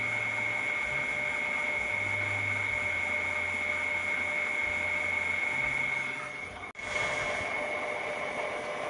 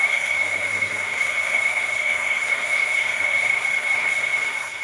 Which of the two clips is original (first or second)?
first